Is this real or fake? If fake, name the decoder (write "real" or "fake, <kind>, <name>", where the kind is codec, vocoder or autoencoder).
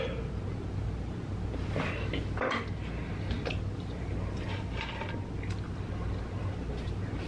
real